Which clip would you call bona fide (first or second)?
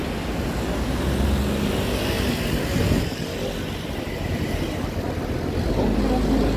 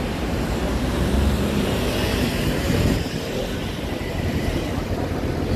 first